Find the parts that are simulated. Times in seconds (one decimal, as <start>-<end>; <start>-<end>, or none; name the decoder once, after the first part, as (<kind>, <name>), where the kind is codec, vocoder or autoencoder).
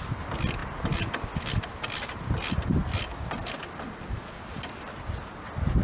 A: none